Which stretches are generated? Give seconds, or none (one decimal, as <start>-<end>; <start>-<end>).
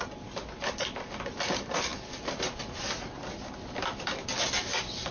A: none